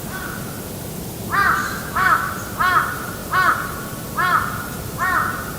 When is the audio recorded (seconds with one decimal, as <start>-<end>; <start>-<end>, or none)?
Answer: 0.0-1.6; 2.3-5.6